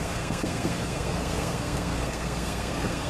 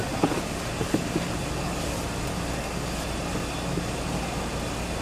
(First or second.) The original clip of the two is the second